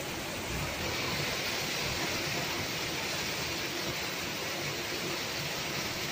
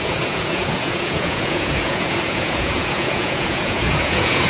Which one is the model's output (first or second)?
second